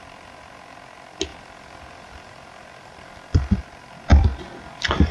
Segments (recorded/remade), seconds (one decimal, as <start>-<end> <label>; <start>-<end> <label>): 0.0-1.3 recorded; 1.3-3.6 remade; 3.6-4.1 recorded; 4.1-5.1 remade

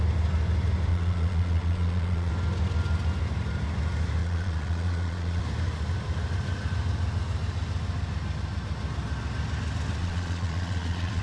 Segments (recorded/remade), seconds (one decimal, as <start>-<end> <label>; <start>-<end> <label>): 0.0-0.9 recorded; 0.9-2.3 remade; 2.3-4.2 recorded; 4.2-5.4 remade; 5.4-10.0 recorded; 10.0-11.2 remade

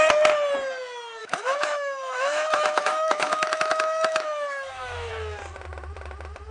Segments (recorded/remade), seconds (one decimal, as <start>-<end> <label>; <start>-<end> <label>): 0.0-1.2 recorded; 1.2-5.1 remade; 5.1-6.5 recorded

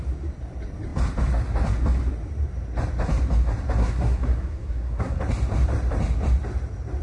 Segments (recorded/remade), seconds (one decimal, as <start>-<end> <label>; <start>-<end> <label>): 0.0-3.8 recorded; 3.8-5.2 remade; 5.2-7.0 recorded

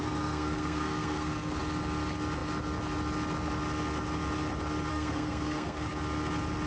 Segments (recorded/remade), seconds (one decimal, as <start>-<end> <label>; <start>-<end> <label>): 0.0-1.6 remade; 1.6-4.9 recorded; 4.9-5.9 remade; 5.9-6.7 recorded